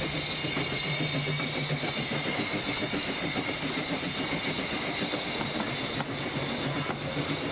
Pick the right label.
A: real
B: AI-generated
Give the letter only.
A